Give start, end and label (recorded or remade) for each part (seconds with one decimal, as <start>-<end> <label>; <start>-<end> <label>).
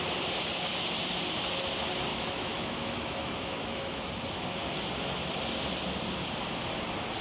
0.0-2.1 recorded; 2.1-4.1 remade; 4.1-7.2 recorded